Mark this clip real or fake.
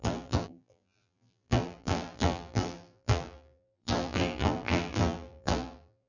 fake